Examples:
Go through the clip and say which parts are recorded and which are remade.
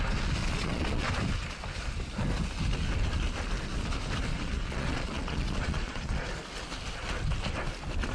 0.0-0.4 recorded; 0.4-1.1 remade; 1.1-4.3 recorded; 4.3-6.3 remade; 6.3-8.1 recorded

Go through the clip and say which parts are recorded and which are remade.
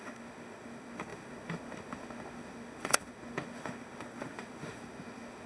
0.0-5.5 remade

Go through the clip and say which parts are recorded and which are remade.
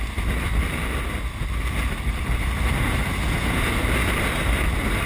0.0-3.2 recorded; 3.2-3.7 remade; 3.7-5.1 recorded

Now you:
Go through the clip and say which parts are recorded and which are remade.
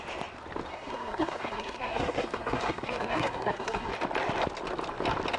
0.0-0.7 recorded; 0.7-3.9 remade; 3.9-5.4 recorded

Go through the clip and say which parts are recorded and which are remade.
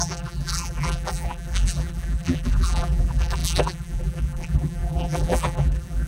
0.0-6.1 remade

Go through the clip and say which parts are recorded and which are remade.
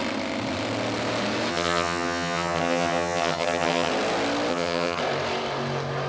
0.0-1.5 recorded; 1.5-3.9 remade; 3.9-4.5 recorded; 4.5-5.0 remade; 5.0-6.1 recorded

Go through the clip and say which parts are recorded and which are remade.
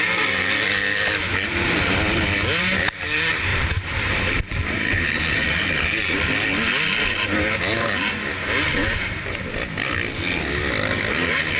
0.0-3.5 recorded; 3.5-6.3 remade; 6.3-8.8 recorded; 8.8-9.5 remade; 9.5-11.6 recorded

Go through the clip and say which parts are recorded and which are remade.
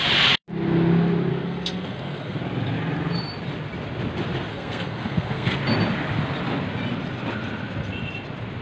0.0-1.3 recorded; 1.3-2.4 remade; 2.4-4.5 recorded; 4.5-5.6 remade; 5.6-8.6 recorded